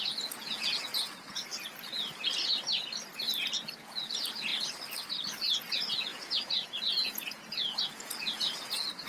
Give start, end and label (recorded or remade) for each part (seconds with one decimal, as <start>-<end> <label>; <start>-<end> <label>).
0.0-1.5 remade; 1.5-3.8 recorded; 3.8-4.5 remade; 4.5-5.6 recorded; 5.6-9.1 remade